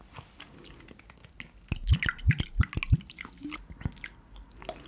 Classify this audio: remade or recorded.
recorded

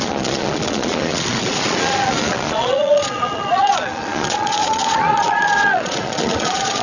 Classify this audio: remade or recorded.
remade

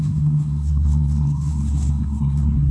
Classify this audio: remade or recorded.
remade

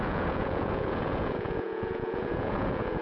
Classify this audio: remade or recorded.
remade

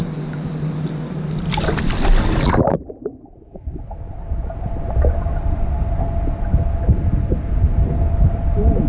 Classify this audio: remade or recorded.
recorded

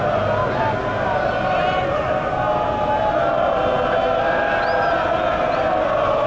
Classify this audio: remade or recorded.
recorded